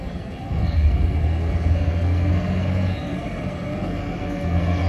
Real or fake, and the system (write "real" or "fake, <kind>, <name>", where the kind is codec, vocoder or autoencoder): fake, codec, SNAC